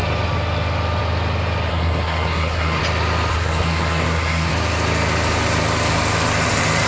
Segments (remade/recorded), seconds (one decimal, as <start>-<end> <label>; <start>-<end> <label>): 0.0-1.7 recorded; 1.7-2.8 remade; 2.8-3.3 recorded; 3.3-4.5 remade; 4.5-6.9 recorded